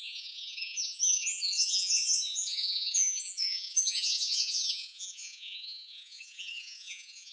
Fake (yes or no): yes